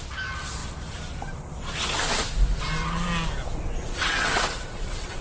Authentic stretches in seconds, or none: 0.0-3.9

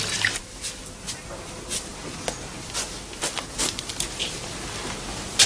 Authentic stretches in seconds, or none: 0.0-5.5